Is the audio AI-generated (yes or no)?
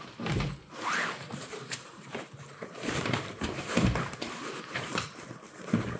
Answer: yes